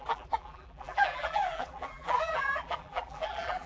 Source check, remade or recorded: remade